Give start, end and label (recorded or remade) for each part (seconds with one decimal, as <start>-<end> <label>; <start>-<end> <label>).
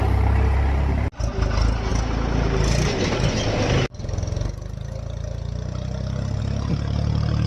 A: 0.0-7.5 recorded